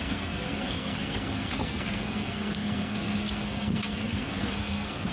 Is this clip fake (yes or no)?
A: yes